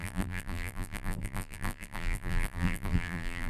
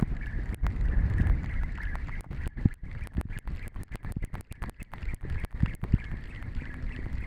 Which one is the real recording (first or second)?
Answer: second